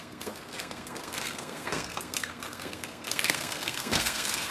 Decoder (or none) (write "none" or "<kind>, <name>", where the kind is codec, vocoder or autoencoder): codec, SNAC